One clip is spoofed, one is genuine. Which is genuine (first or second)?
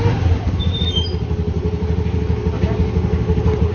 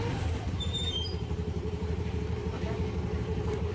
first